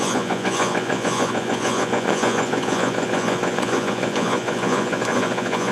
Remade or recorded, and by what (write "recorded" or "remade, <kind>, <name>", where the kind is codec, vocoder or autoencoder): remade, vocoder, Vocos